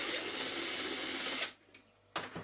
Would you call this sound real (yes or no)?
yes